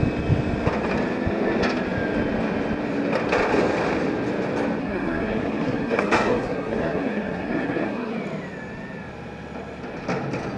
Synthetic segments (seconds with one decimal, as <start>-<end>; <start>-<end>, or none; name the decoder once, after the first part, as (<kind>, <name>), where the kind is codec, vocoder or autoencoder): 4.8-8.1 (codec, SNAC)